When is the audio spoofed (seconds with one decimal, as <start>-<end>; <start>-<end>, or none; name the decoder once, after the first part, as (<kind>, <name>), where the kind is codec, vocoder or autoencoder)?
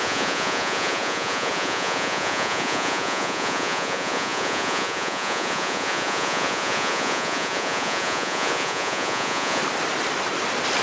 0.0-9.6 (vocoder, Vocos)